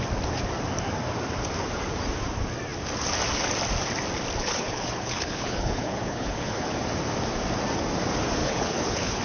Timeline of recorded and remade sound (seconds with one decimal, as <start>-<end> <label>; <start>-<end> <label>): 0.0-4.4 recorded; 4.4-6.7 remade; 6.7-8.4 recorded; 8.4-9.2 remade